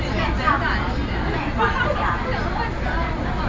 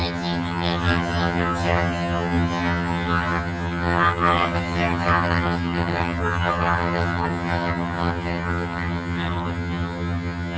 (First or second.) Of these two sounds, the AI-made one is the second